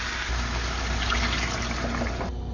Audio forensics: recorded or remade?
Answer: recorded